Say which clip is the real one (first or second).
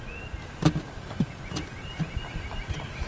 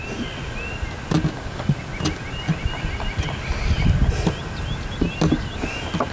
second